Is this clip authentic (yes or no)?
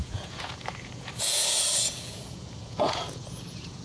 no